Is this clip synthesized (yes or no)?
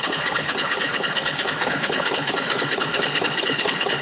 yes